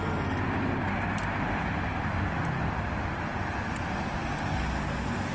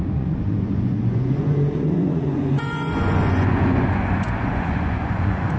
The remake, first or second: second